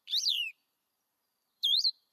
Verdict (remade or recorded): remade